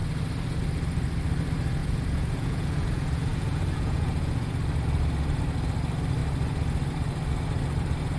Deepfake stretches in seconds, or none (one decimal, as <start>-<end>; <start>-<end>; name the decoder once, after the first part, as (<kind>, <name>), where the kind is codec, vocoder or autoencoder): 1.8-4.5 (vocoder, Vocos)

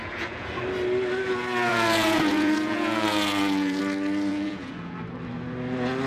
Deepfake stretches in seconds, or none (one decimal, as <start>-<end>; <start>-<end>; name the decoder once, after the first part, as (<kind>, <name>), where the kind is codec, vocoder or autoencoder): 0.0-0.6 (vocoder, Vocos); 1.7-3.8; 4.3-5.0

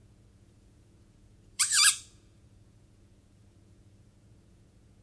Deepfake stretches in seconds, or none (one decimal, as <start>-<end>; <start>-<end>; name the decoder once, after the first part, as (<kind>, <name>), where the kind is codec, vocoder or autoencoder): 0.0-5.0 (vocoder, Vocos)

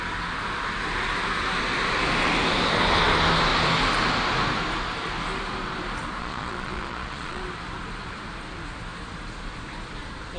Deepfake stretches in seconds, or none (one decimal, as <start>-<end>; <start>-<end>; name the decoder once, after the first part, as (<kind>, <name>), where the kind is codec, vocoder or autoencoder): 6.2-7.4 (vocoder, Vocos)